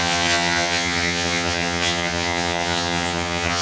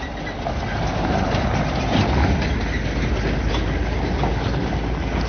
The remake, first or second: first